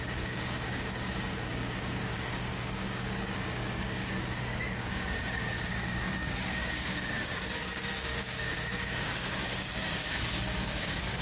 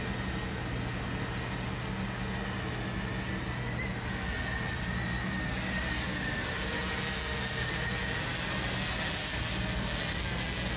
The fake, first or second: first